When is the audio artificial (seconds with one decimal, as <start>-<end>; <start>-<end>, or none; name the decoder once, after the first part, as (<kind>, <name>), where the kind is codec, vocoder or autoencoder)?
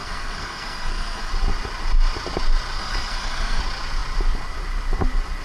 0.0-1.3 (codec, SNAC); 2.8-3.6